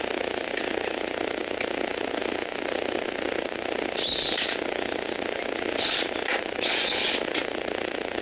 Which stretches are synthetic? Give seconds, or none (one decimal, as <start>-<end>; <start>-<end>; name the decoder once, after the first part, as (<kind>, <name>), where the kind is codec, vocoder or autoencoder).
none

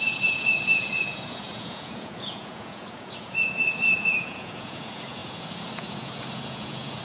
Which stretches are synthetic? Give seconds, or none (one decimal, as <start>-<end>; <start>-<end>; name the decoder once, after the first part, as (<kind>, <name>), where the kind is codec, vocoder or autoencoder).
0.0-7.0 (vocoder, Vocos)